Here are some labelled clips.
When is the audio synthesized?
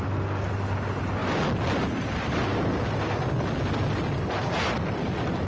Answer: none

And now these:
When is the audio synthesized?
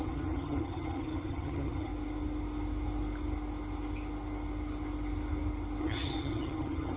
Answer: 0.0-1.9; 5.8-7.0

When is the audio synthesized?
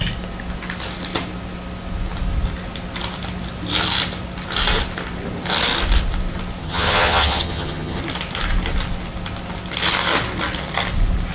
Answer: 6.6-8.0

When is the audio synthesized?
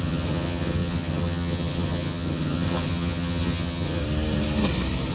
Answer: 0.0-4.0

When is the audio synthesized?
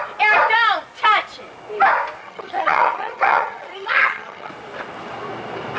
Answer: 2.2-4.5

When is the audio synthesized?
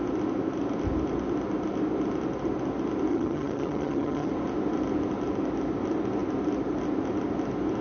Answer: 3.1-4.3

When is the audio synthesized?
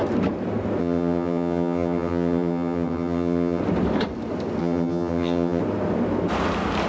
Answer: 0.8-3.6; 4.6-5.6